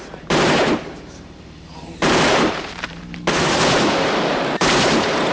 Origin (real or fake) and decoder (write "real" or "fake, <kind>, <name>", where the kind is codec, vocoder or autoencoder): fake, vocoder, BigVGAN v2